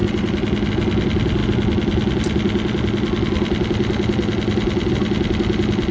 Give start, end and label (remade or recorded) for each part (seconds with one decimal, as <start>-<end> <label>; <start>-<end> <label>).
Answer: 0.0-5.9 recorded